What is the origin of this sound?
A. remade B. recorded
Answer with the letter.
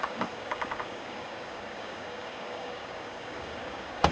A